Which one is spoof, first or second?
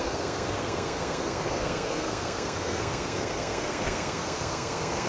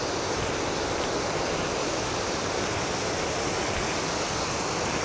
first